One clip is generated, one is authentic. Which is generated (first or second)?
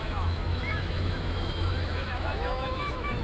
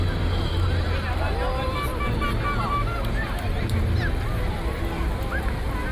first